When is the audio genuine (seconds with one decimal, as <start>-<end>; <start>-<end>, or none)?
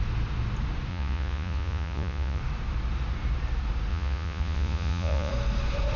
0.0-0.9; 2.4-3.9; 5.3-6.0